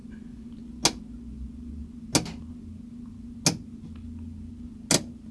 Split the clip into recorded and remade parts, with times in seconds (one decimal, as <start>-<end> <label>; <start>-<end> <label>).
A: 0.0-5.3 recorded